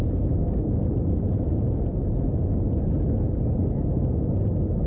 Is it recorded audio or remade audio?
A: recorded